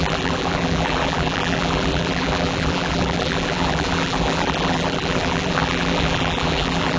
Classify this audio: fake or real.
fake